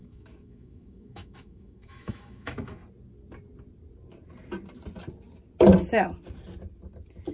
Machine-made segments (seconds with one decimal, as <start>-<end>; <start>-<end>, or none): 0.0-2.8